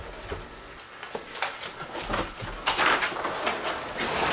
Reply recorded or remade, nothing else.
recorded